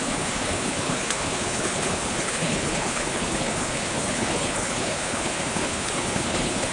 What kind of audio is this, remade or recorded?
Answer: remade